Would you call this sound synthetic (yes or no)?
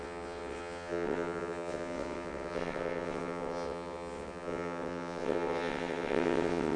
yes